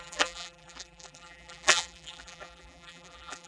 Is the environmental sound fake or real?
fake